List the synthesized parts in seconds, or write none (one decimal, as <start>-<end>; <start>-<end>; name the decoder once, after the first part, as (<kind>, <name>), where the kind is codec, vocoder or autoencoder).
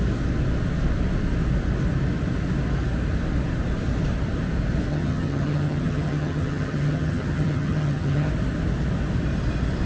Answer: 4.9-8.3 (vocoder, HiFi-GAN)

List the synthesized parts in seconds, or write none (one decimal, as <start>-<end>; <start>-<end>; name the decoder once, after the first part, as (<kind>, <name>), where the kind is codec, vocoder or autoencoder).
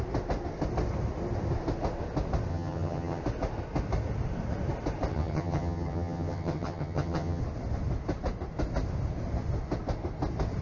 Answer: 2.5-3.2 (vocoder, HiFi-GAN); 5.1-7.4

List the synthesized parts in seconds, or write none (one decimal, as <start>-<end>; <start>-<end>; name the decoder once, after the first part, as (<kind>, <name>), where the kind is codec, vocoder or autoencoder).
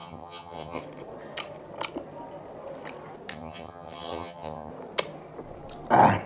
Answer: 0.0-0.8 (vocoder, HiFi-GAN); 3.3-4.7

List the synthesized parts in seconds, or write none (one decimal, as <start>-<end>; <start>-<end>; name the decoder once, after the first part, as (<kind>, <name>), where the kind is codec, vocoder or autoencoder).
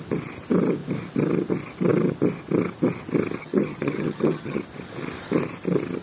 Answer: 3.4-4.6 (vocoder, HiFi-GAN)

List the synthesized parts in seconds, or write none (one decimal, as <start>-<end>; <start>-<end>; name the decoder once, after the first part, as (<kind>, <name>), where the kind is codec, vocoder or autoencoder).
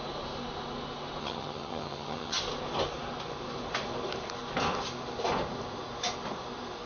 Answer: 1.2-2.4 (vocoder, HiFi-GAN)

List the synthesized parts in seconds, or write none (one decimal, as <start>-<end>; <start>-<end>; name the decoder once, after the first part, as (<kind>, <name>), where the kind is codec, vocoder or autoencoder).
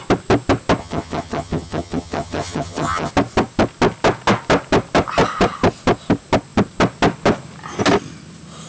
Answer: 0.8-3.1 (vocoder, HiFi-GAN)